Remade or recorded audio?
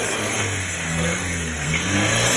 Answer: remade